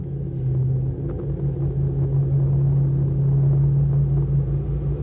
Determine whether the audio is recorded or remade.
recorded